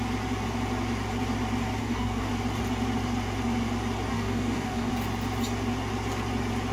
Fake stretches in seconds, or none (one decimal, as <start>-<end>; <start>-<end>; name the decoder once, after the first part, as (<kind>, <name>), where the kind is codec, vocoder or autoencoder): 1.8-2.3 (codec, DAC); 4.1-4.9